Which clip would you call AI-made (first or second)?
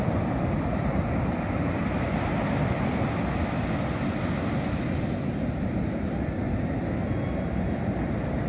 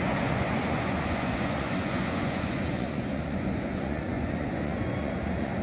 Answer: second